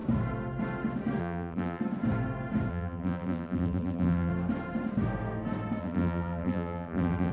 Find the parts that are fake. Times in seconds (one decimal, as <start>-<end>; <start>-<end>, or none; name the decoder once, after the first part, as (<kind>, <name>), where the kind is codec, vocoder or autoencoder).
1.2-1.8 (vocoder, BigVGAN v2); 2.7-4.3; 5.8-7.3